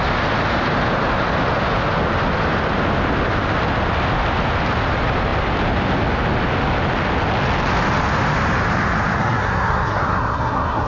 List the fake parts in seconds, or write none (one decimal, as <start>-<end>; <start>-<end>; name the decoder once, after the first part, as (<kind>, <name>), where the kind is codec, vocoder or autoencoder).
9.2-10.9 (codec, SNAC)